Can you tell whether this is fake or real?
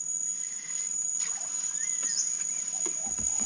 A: real